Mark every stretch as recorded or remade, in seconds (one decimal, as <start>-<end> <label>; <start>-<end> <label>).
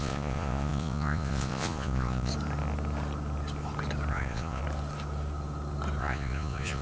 0.0-2.3 remade; 2.3-4.1 recorded; 4.1-4.6 remade; 4.6-6.0 recorded; 6.0-6.8 remade